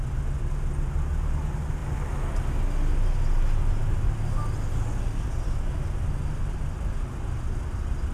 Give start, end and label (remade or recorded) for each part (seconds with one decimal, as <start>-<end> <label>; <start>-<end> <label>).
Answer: 0.0-8.1 recorded